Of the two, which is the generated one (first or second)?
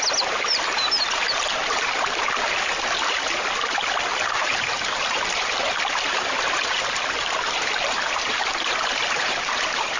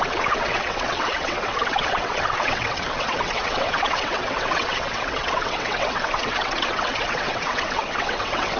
second